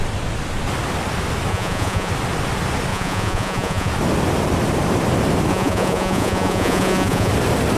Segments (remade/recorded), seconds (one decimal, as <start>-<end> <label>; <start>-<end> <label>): 0.0-1.5 recorded; 1.5-2.1 remade; 2.1-2.9 recorded; 2.9-3.9 remade; 3.9-5.5 recorded; 5.5-7.3 remade; 7.3-7.8 recorded